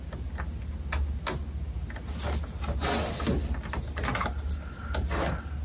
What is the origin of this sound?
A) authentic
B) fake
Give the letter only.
A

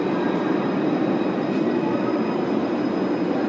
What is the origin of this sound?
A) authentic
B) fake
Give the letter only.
A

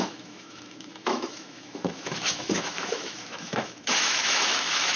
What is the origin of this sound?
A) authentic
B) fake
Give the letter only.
B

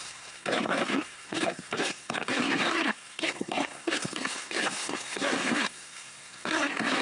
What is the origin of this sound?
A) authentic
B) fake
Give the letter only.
B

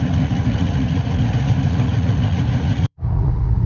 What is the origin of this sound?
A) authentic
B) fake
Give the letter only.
B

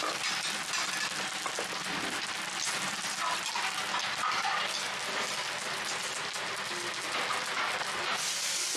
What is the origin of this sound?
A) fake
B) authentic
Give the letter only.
B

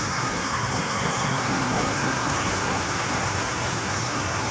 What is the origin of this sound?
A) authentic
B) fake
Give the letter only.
B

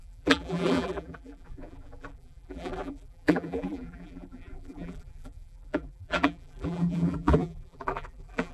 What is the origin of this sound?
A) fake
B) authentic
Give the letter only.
A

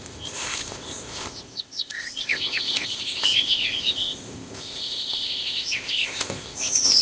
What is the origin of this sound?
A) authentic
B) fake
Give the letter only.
B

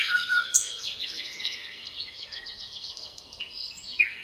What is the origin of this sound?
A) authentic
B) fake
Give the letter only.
B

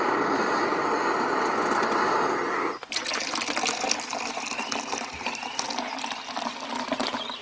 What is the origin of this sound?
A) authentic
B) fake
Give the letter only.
A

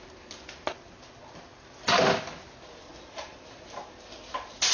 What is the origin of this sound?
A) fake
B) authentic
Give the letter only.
B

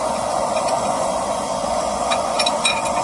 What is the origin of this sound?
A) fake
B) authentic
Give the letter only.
A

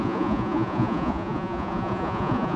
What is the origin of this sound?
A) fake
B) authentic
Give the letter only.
A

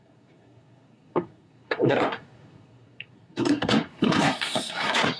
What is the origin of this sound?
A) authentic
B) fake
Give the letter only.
B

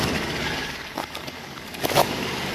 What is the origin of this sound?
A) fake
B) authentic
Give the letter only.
A